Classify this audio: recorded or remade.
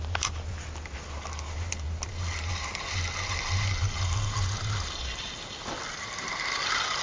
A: recorded